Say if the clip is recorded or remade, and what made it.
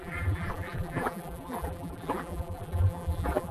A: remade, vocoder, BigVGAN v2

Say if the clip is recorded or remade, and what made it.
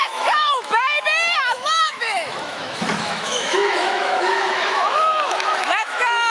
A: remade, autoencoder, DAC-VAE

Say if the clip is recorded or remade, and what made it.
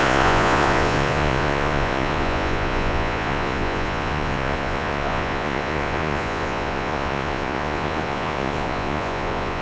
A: remade, vocoder, Vocos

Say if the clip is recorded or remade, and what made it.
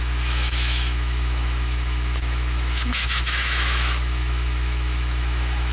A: remade, autoencoder, DAC-VAE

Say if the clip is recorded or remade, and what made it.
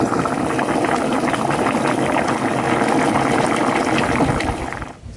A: recorded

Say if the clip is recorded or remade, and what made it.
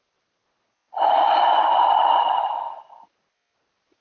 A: remade, vocoder, BigVGAN v2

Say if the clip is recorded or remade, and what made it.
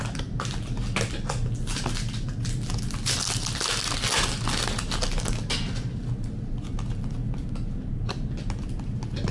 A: recorded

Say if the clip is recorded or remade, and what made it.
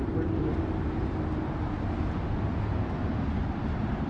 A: recorded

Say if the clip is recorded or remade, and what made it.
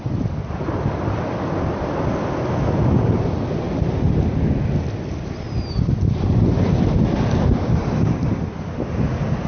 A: recorded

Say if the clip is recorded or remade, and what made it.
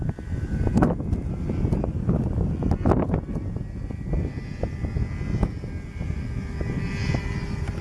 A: recorded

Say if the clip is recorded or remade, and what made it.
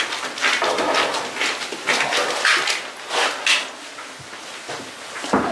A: recorded